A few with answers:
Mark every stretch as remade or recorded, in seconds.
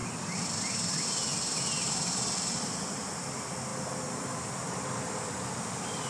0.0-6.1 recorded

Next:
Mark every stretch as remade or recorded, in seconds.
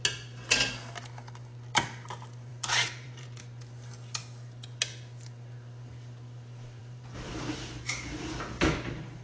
0.0-2.5 recorded; 2.5-3.4 remade; 3.4-6.8 recorded; 6.8-8.5 remade; 8.5-9.2 recorded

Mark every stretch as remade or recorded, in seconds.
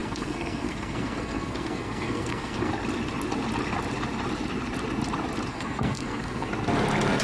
0.0-2.7 remade; 2.7-5.5 recorded; 5.5-6.5 remade; 6.5-7.2 recorded